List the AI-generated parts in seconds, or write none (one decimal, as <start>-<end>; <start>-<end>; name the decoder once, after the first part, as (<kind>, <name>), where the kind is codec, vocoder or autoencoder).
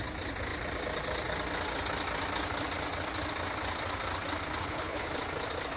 4.6-5.1 (codec, HILCodec)